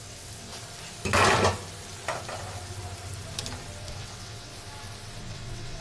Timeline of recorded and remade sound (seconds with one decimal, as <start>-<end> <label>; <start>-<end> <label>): 0.0-0.5 remade; 0.5-4.0 recorded; 4.0-4.5 remade; 4.5-5.2 recorded; 5.2-5.8 remade